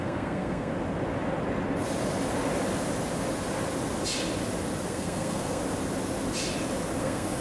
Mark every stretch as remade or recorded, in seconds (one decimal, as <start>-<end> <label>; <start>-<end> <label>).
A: 0.0-0.7 remade; 0.7-4.9 recorded; 4.9-5.6 remade; 5.6-7.0 recorded; 7.0-7.4 remade